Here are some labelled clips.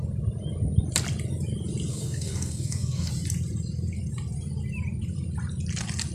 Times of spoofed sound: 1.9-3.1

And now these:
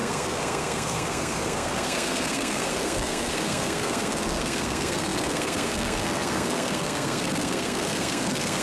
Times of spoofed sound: 0.0-8.6

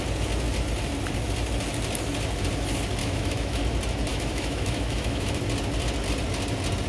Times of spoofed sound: 3.0-3.6; 4.1-5.4